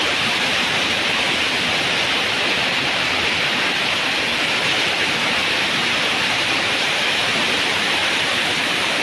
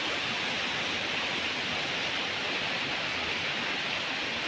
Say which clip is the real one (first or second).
second